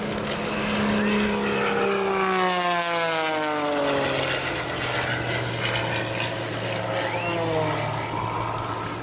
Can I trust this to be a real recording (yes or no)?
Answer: yes